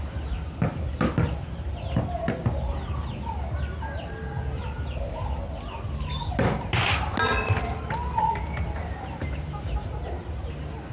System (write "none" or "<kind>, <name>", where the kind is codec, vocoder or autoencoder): none